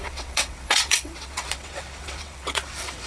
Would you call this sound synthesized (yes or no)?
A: yes